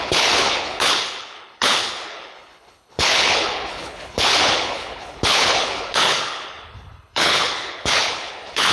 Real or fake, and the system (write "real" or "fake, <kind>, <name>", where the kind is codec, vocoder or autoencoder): fake, codec, HILCodec